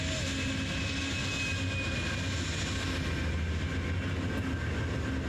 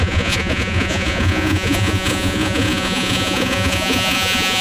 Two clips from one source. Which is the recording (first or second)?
first